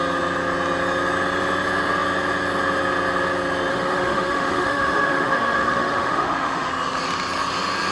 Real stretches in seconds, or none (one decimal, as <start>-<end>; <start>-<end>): 0.0-3.7; 6.7-7.9